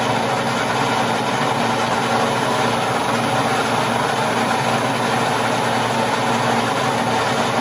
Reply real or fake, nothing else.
real